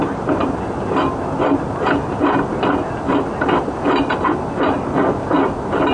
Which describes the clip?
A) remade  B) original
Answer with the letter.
B